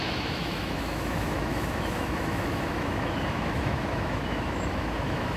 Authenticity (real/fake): fake